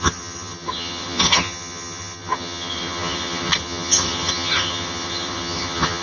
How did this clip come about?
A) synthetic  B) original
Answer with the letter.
A